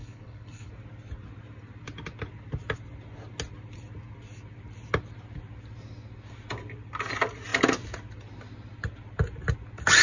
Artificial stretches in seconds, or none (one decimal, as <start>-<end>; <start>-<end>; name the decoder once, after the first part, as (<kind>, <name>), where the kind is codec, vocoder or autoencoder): 0.0-0.7 (codec, HILCodec)